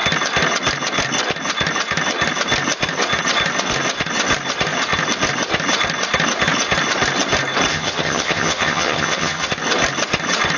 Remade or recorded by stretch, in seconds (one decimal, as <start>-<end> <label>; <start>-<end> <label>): 0.0-7.7 recorded; 7.7-9.5 remade; 9.5-10.6 recorded